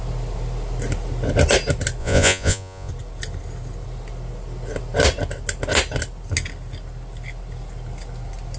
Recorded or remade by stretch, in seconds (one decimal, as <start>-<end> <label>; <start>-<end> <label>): 0.0-2.0 recorded; 2.0-2.9 remade; 2.9-8.6 recorded